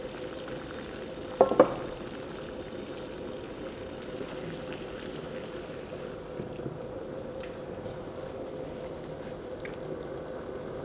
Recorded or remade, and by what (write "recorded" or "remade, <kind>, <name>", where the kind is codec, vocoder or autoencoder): recorded